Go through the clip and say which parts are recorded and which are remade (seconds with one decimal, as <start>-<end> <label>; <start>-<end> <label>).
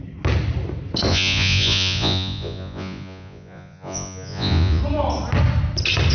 0.0-1.1 recorded; 1.1-4.8 remade; 4.8-6.1 recorded